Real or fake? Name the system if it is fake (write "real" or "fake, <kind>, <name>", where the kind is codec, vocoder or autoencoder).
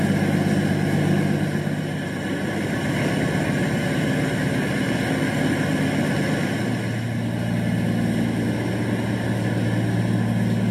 real